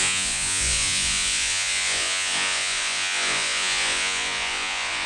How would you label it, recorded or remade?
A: remade